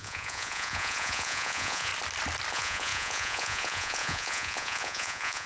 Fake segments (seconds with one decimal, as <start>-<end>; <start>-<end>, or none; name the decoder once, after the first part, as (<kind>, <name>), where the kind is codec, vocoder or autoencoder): 0.0-1.9 (vocoder, Vocos); 2.5-5.5